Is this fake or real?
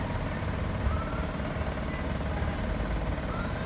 real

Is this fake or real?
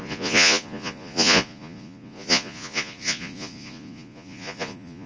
fake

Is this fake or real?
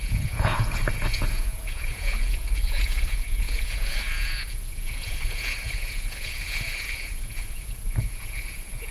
fake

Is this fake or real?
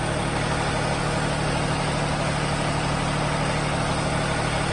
real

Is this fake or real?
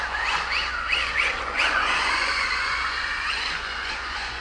fake